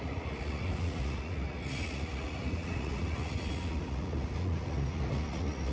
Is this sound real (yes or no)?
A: no